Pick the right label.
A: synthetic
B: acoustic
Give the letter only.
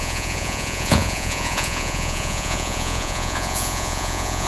A